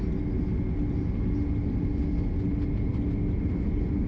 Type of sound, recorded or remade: recorded